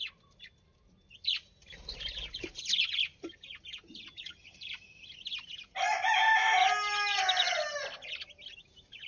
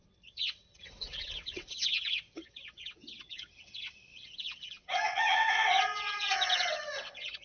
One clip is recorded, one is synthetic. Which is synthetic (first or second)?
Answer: second